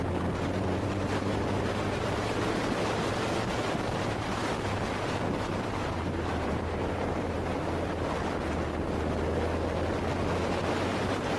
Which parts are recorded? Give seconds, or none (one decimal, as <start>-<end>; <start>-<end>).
2.6-4.0; 4.4-5.4; 7.5-10.5